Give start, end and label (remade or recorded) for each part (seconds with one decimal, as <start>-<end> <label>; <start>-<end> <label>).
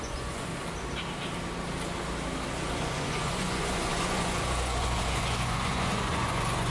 0.0-0.5 remade; 0.5-2.6 recorded; 2.6-6.7 remade